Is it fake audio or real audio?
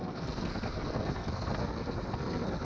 fake